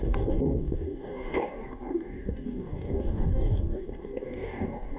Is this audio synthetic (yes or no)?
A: yes